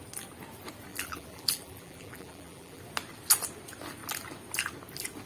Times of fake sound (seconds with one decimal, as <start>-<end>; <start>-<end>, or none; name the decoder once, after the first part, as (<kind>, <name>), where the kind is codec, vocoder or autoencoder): 0.9-2.8 (vocoder, BigVGAN v2)